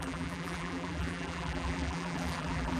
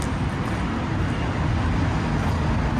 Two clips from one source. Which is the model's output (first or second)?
first